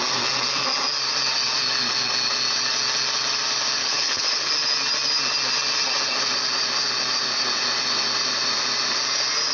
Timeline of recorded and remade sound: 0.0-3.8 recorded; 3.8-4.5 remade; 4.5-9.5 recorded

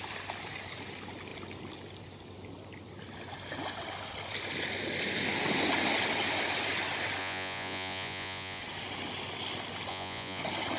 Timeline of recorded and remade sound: 0.0-7.2 recorded; 7.2-8.6 remade; 8.6-9.9 recorded; 9.9-10.4 remade; 10.4-10.8 recorded

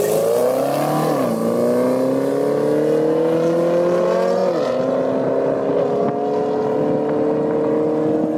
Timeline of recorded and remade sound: 0.0-8.4 recorded

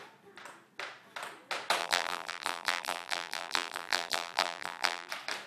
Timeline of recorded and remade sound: 0.0-1.8 recorded; 1.8-5.1 remade; 5.1-5.5 recorded

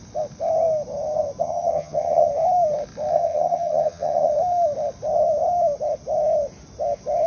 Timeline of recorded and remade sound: 0.0-1.4 recorded; 1.4-2.3 remade; 2.3-3.1 recorded; 3.1-4.3 remade; 4.3-7.3 recorded

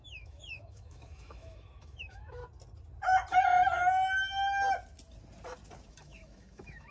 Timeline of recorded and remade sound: 0.0-2.4 remade; 2.4-5.9 recorded; 5.9-6.9 remade